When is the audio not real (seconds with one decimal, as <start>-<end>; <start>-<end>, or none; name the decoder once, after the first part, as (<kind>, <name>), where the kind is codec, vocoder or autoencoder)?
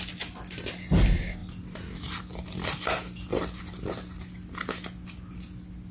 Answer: none